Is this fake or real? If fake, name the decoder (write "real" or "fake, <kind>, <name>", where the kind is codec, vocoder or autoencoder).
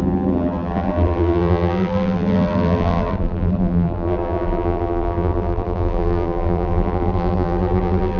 fake, vocoder, BigVGAN v2